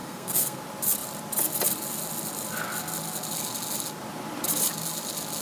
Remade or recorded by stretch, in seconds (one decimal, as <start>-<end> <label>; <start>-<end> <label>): 0.0-0.6 remade; 0.6-5.4 recorded